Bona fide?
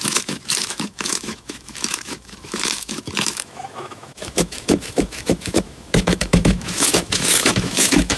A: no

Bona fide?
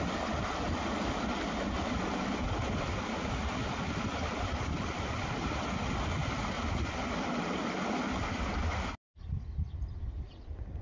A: yes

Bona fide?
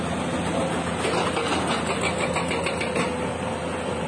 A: yes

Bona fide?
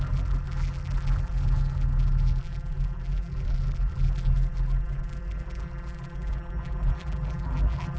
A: no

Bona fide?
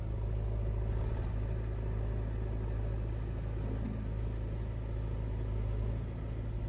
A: yes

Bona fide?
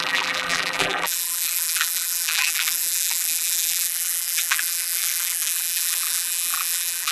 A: no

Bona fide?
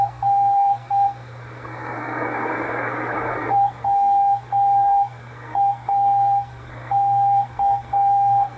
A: no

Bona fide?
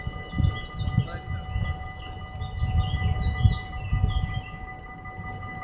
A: yes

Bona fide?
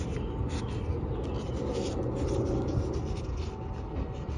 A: yes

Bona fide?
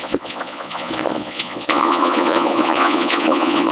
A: no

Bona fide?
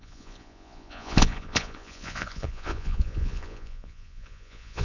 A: no